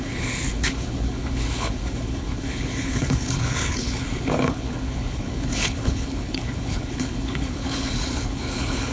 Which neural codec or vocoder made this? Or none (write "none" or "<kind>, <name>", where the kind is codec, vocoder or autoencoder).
codec, HILCodec